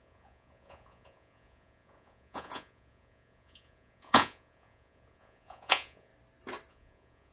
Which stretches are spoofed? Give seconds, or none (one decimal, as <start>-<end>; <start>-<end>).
0.0-6.1; 6.7-7.3